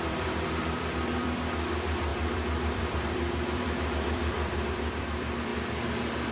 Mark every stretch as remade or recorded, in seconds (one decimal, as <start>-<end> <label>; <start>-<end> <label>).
0.0-5.5 remade; 5.5-6.3 recorded